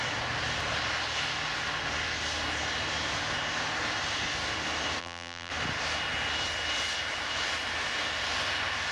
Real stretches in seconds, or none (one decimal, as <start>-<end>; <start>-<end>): 0.0-5.0; 5.5-8.9